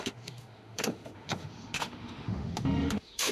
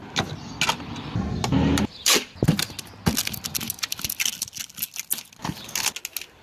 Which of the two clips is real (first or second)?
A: second